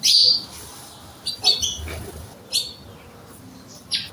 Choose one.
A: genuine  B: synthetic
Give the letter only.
B